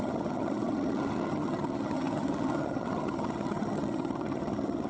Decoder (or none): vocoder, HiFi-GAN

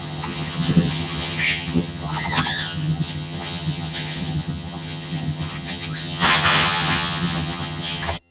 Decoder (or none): vocoder, HiFi-GAN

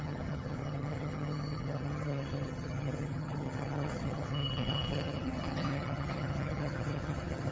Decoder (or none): vocoder, HiFi-GAN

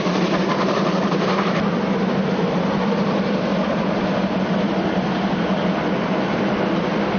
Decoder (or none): none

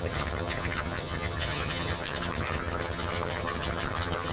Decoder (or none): vocoder, HiFi-GAN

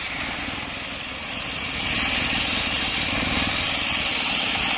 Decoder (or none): none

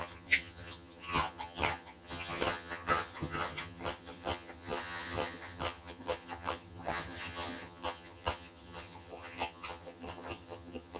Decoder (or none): vocoder, HiFi-GAN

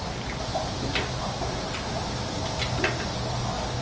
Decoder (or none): none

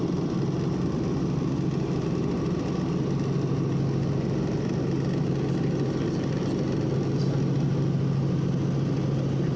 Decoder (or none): none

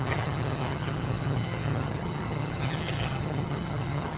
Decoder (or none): vocoder, HiFi-GAN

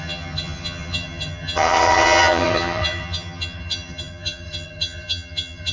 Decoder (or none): vocoder, HiFi-GAN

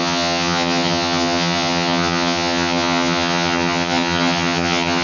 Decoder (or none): vocoder, HiFi-GAN